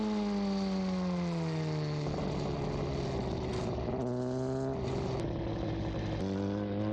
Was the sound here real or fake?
real